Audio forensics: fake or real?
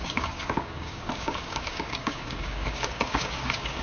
fake